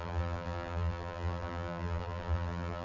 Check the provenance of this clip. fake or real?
fake